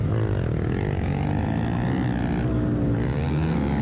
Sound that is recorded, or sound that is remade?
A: recorded